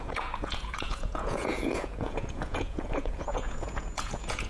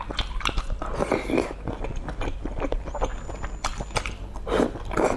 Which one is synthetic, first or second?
first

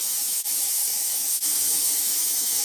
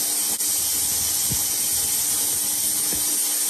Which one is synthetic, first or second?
first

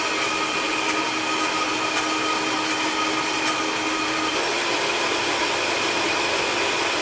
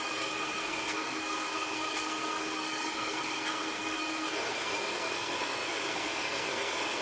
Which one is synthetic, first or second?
second